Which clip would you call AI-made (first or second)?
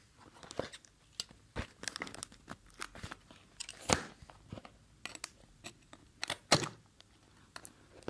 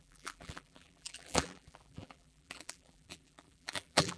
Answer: second